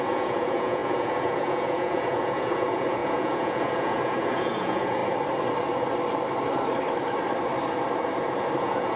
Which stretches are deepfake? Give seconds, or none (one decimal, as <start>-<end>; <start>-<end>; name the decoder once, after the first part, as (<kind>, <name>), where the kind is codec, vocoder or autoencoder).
0.0-5.0 (vocoder, Vocos); 8.6-9.0